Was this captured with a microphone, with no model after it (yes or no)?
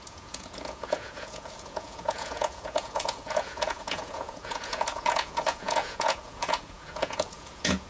no